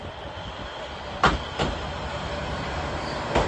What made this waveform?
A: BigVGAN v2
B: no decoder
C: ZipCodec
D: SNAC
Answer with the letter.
B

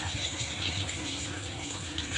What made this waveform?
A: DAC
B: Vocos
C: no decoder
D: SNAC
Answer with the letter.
D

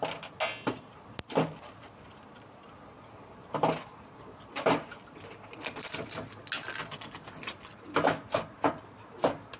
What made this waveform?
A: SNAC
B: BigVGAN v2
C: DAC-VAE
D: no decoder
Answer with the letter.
D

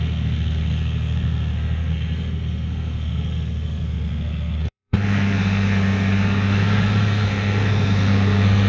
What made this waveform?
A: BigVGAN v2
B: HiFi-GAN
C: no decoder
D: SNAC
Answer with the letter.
D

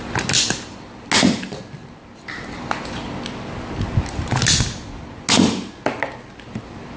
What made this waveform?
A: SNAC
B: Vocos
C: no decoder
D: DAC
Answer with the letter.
C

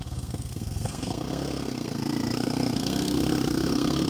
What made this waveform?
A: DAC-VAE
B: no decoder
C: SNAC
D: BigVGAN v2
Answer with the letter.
C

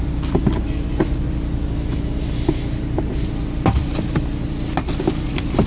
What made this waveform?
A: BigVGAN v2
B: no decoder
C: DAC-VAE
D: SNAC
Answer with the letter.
B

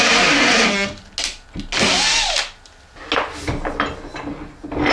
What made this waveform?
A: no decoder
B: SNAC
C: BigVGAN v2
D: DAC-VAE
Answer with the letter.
A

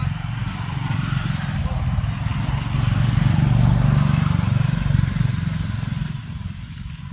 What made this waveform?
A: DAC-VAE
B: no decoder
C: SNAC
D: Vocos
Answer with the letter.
B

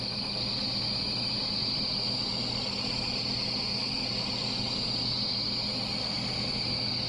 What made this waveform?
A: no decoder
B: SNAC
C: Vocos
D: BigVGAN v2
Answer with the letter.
A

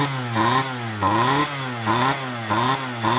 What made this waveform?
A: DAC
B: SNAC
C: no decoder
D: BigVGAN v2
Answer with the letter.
C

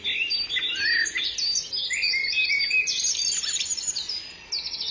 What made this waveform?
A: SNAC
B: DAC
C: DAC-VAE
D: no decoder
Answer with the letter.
D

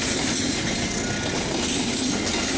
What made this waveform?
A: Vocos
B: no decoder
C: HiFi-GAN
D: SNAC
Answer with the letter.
B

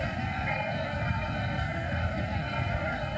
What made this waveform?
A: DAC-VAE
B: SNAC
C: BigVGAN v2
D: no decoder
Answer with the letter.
B